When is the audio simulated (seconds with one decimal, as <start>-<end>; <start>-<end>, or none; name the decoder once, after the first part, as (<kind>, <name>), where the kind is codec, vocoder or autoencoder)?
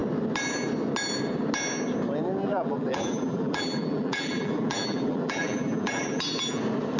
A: 2.4-6.6 (vocoder, BigVGAN v2)